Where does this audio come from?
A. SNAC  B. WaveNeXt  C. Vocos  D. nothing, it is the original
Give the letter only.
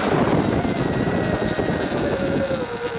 D